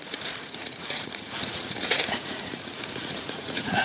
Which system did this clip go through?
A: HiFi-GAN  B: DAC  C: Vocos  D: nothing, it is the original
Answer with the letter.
C